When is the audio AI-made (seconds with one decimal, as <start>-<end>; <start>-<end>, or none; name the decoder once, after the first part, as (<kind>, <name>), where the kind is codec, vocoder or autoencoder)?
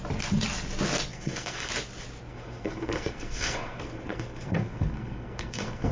1.1-1.7 (codec, SNAC); 2.3-5.9